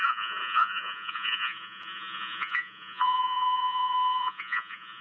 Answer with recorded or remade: remade